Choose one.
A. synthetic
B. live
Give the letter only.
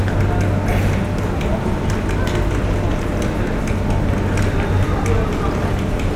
B